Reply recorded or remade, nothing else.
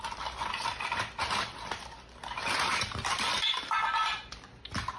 recorded